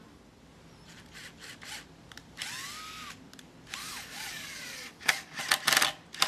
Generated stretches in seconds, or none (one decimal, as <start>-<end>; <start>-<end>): 3.8-5.4